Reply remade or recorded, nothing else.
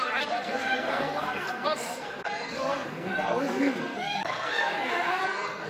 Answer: remade